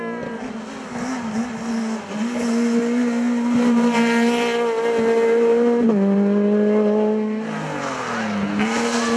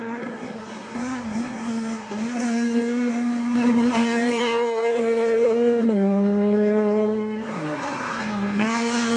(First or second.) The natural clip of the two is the first